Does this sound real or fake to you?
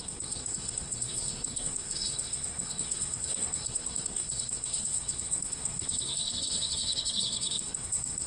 fake